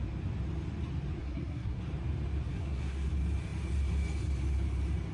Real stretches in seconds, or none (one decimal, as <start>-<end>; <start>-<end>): 0.0-1.2; 1.8-2.5; 3.1-5.1